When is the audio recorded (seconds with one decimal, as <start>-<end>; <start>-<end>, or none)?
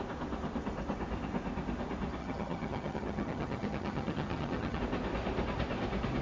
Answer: 0.0-2.2; 4.8-6.2